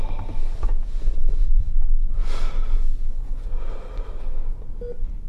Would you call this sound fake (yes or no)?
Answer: no